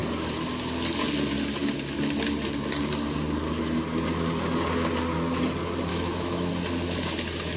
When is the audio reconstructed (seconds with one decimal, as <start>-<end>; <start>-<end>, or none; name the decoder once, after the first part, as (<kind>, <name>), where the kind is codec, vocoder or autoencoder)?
5.9-6.5 (autoencoder, DAC-VAE)